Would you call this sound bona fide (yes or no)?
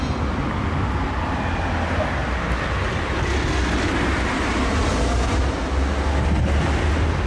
yes